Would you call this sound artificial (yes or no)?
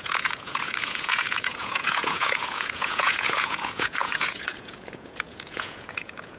yes